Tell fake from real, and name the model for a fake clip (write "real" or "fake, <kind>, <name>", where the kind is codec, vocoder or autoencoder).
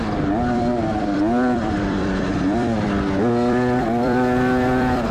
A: fake, vocoder, BigVGAN v2